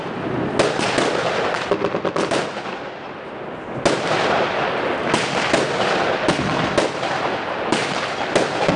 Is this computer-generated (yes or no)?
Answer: no